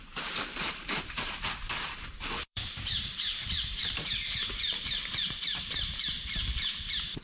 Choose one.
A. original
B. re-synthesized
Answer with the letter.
B